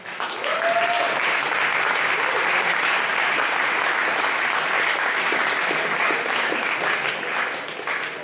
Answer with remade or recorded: recorded